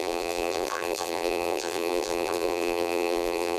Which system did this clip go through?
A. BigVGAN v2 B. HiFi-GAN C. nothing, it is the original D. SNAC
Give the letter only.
A